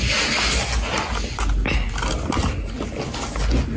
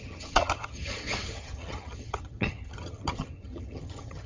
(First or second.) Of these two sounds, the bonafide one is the first